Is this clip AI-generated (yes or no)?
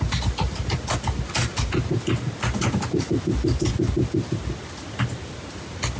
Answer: no